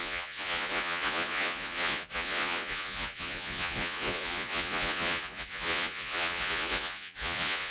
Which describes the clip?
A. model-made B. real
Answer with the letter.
A